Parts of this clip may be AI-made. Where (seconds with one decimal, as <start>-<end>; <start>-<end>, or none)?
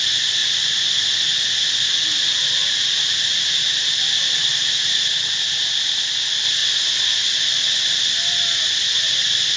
none